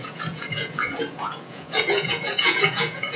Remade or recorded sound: remade